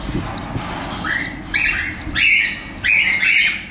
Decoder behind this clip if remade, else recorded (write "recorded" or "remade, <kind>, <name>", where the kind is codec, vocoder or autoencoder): recorded